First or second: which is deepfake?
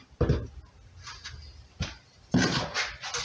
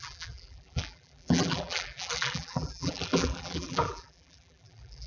second